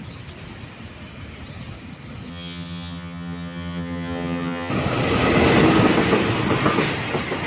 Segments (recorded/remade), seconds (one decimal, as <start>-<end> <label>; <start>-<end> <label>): 0.0-2.3 recorded; 2.3-4.7 remade; 4.7-7.5 recorded